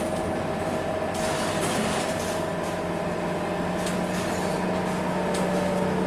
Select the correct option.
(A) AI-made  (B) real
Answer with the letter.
B